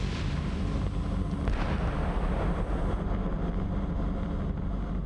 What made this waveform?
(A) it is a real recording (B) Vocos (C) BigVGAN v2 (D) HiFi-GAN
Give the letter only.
A